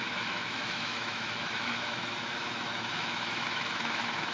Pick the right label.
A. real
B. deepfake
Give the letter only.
B